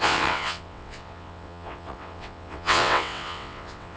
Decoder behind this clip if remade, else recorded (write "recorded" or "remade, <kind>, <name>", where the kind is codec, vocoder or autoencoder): remade, vocoder, WaveNeXt